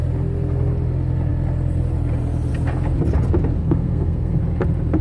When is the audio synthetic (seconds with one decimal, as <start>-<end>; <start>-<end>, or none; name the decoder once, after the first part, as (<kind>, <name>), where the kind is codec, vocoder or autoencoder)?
3.6-4.4 (codec, SNAC)